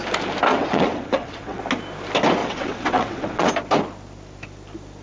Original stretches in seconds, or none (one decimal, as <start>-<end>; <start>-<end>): 0.0-0.5; 1.6-2.4; 3.5-5.0